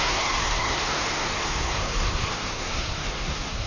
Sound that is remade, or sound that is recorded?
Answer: remade